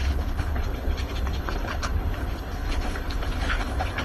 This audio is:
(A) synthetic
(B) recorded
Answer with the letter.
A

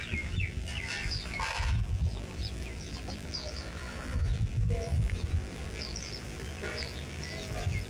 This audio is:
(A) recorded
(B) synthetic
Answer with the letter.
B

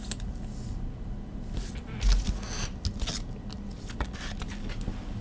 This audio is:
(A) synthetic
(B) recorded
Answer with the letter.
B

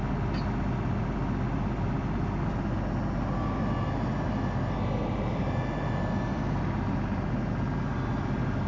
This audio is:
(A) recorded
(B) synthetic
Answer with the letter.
A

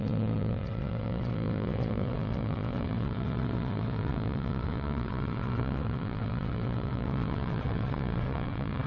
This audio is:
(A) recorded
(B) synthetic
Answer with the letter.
B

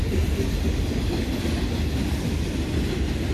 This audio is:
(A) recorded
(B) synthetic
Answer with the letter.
A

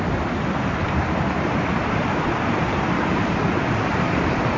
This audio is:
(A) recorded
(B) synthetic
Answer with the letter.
A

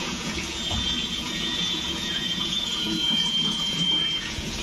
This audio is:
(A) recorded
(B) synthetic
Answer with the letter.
B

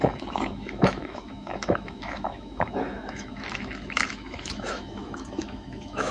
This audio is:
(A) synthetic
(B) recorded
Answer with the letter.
A